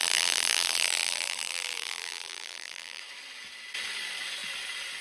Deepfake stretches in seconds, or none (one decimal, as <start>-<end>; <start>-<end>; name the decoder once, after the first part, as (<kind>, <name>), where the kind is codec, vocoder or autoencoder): 0.0-3.0 (vocoder, BigVGAN v2)